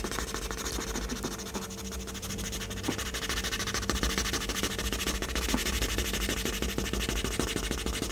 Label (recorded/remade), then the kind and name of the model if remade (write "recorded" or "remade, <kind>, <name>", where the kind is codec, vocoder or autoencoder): recorded